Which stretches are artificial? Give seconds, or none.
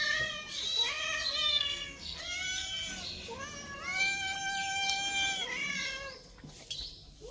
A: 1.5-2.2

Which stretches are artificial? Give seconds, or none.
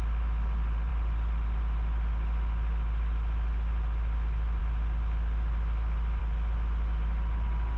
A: none